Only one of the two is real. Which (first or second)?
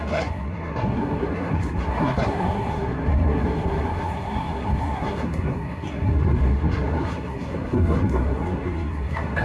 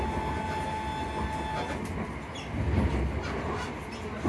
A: second